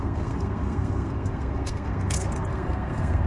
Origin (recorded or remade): remade